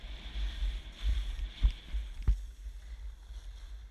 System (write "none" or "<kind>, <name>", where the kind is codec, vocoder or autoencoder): none